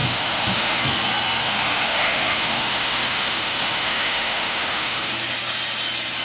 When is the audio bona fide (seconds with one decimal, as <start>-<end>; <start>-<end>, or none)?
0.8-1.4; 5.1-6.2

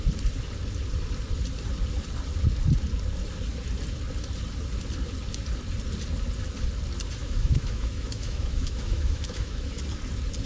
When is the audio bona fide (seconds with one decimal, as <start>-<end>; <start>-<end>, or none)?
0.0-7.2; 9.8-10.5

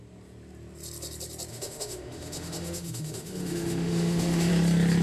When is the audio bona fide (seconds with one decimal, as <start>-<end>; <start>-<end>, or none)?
0.0-1.5; 4.5-5.0

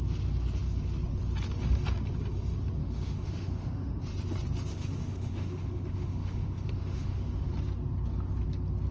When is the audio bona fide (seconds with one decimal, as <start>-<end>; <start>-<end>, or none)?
0.0-2.8; 4.0-4.7; 7.5-8.9